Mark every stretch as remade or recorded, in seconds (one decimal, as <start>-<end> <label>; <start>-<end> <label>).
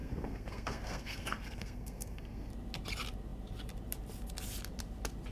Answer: 0.0-2.5 remade; 2.5-5.3 recorded